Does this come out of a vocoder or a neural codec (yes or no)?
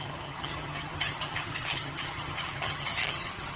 yes